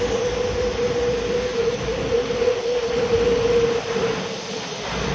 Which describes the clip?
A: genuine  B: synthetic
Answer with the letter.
A